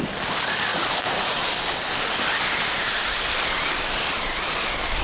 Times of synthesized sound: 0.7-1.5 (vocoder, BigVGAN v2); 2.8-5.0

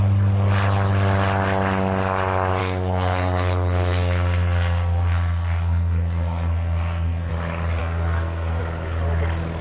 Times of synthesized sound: 2.6-7.3 (codec, SNAC); 7.8-8.6